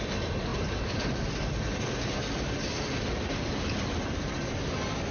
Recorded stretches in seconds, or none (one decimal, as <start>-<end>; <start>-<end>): 0.0-0.5; 1.5-5.1